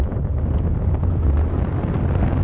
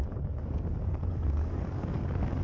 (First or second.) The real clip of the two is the first